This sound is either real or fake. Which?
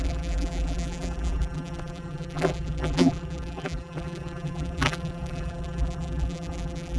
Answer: fake